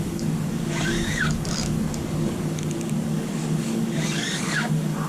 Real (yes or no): no